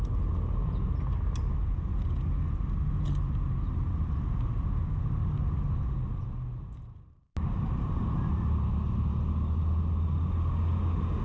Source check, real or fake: real